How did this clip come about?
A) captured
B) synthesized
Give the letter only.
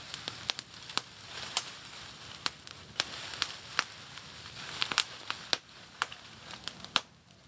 A